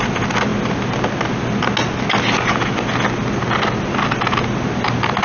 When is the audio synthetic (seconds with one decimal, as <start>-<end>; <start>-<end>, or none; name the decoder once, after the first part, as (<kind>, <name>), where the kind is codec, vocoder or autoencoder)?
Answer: none